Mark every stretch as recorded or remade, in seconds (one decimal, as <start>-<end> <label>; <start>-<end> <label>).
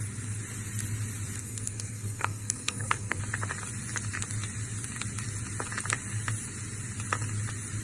0.0-1.4 recorded; 1.4-3.2 remade; 3.2-7.8 recorded